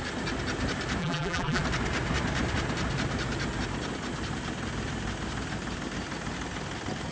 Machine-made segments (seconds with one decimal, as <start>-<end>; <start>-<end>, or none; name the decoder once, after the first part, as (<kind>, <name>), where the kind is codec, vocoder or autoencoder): 1.0-1.6 (vocoder, BigVGAN v2)